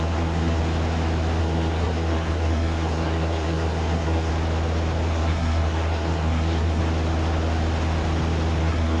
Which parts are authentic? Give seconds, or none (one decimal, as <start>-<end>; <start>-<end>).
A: 0.6-1.4; 4.3-5.1; 6.8-8.6